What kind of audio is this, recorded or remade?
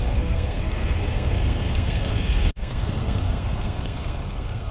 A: remade